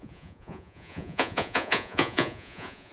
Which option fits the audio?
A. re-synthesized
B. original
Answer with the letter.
A